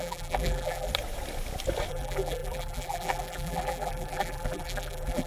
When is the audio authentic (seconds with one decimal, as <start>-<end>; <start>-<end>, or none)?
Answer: 0.9-1.9